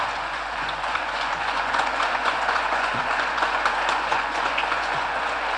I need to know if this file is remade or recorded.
remade